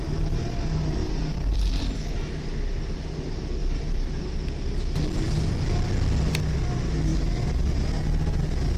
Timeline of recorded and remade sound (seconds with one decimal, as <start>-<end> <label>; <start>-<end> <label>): 0.0-1.0 recorded; 1.0-1.7 remade; 1.7-3.6 recorded; 3.6-4.2 remade; 4.2-8.8 recorded